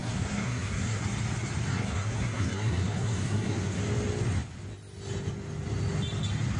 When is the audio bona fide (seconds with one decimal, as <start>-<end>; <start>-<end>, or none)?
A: 1.0-1.7; 3.8-6.6